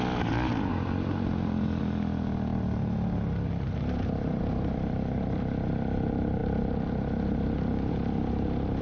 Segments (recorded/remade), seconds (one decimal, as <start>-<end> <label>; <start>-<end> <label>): 0.0-0.7 recorded; 0.7-1.8 remade; 1.8-8.8 recorded